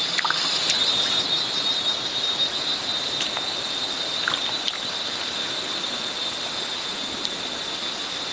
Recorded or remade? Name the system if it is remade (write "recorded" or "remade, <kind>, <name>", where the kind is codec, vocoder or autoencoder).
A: recorded